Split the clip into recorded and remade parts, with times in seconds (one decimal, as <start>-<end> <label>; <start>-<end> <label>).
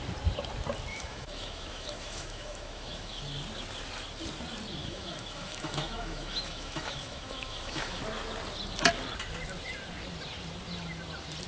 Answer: 0.0-0.9 recorded; 0.9-3.2 remade; 3.2-4.8 recorded; 4.8-8.0 remade; 8.0-11.5 recorded